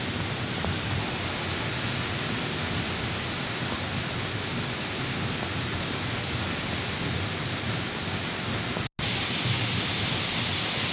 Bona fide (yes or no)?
yes